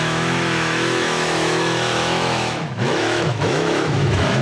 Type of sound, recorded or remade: remade